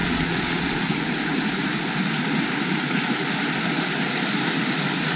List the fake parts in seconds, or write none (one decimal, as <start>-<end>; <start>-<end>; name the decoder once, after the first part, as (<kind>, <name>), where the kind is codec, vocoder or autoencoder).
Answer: 0.0-0.9 (vocoder, Vocos)

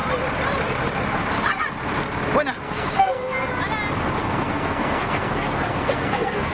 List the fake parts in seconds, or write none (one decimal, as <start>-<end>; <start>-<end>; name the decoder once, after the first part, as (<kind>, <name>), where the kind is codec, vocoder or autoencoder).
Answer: 2.6-3.5 (codec, SNAC); 4.2-6.5